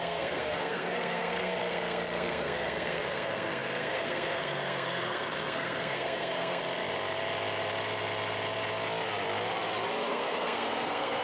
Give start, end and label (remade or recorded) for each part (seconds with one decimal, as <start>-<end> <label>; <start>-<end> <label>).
0.0-6.6 remade; 6.6-10.1 recorded; 10.1-11.2 remade